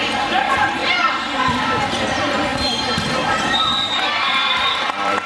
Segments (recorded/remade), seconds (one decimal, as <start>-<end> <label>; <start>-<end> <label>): 0.0-5.3 remade